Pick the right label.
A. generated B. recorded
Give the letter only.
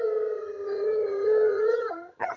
A